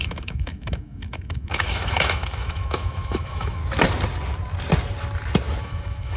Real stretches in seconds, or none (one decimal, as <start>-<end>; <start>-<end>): 3.6-5.6